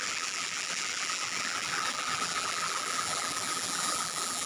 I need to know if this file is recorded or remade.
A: remade